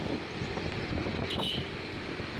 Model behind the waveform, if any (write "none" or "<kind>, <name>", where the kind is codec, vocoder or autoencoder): none